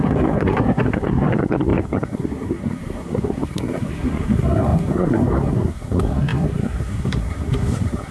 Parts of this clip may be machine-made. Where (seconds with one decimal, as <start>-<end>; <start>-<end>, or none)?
0.0-8.1